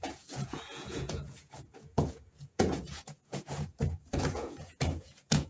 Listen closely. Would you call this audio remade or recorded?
remade